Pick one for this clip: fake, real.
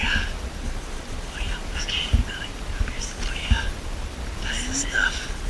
real